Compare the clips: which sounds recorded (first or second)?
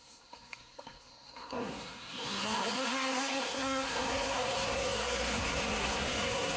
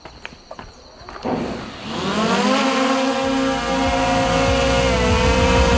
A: second